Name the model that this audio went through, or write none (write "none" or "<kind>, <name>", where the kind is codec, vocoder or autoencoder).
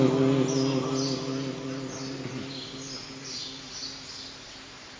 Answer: none